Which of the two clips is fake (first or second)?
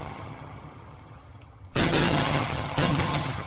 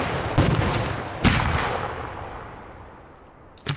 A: first